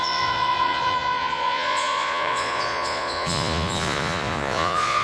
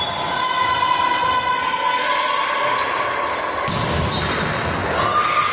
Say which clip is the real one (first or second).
second